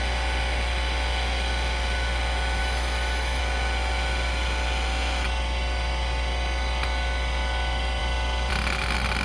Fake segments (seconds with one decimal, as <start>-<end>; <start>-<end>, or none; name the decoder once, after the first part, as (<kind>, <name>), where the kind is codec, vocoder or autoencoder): 2.6-3.4 (autoencoder, DAC-VAE)

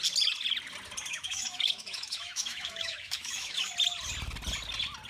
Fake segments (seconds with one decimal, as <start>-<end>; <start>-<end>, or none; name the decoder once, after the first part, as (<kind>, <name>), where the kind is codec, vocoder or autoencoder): 1.1-3.7 (autoencoder, DAC-VAE)

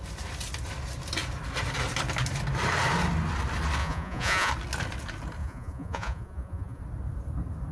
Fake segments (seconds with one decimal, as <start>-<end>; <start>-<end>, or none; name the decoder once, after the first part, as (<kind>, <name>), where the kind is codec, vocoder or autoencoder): 3.8-4.5 (vocoder, Vocos); 5.4-6.8

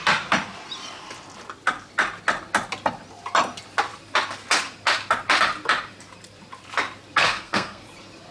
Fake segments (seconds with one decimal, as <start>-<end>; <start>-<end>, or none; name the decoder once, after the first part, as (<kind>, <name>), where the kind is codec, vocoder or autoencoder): 7.2-7.8 (codec, SNAC)

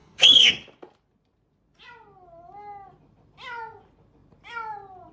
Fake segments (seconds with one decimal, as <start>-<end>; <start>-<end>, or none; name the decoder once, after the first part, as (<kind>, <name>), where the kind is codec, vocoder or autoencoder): 0.0-0.5 (codec, SNAC)

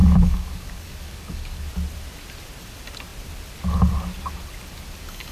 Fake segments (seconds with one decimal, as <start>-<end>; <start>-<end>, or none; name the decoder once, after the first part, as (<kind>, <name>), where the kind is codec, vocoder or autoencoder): 0.0-1.7 (codec, DAC)

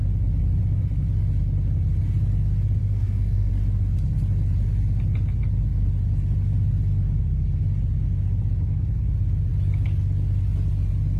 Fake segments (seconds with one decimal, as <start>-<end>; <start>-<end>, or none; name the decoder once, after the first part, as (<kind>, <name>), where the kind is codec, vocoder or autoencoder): 2.8-3.5 (codec, SNAC)